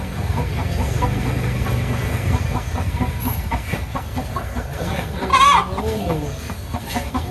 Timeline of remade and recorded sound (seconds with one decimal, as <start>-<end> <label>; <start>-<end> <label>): 0.0-5.3 remade; 5.3-5.8 recorded; 5.8-7.3 remade